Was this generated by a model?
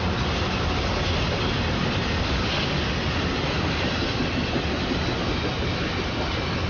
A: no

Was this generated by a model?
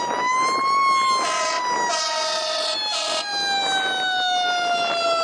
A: no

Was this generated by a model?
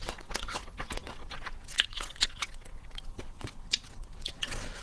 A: yes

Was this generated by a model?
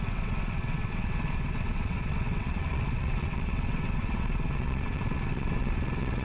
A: yes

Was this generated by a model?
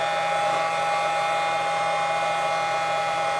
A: no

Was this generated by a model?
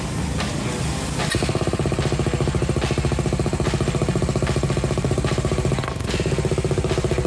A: no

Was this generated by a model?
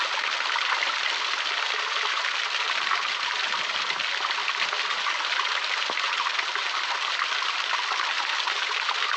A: no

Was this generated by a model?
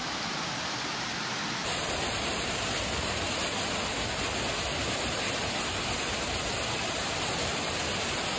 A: no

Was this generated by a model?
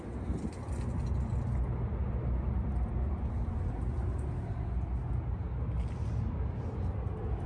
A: no